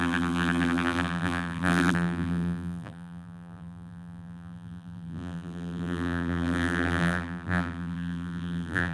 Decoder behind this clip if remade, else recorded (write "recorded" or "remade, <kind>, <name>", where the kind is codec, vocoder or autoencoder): remade, vocoder, BigVGAN v2